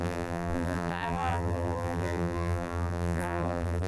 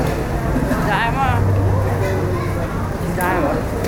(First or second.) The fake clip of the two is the first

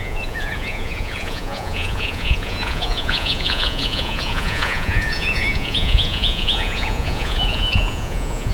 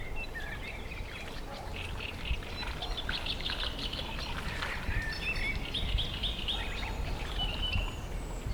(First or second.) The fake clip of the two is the first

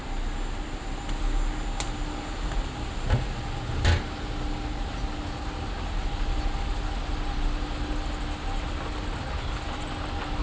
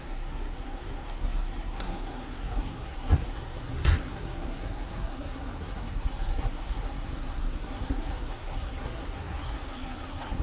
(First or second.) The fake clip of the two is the second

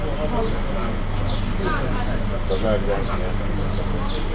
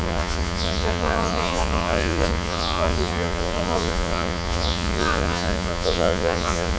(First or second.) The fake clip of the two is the second